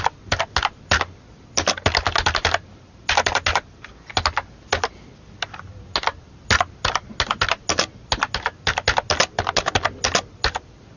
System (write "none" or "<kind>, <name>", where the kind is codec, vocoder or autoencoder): none